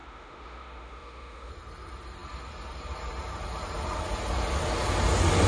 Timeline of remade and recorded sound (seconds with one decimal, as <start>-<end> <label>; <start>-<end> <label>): 0.0-1.5 remade; 1.5-5.5 recorded